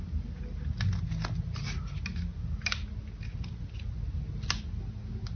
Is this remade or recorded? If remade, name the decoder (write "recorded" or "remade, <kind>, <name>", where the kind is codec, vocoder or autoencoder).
recorded